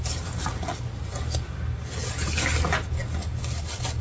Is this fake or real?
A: real